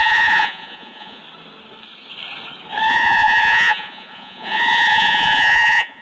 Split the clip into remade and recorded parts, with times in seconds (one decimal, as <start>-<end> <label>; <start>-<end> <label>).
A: 0.0-1.2 remade; 1.2-2.9 recorded; 2.9-6.0 remade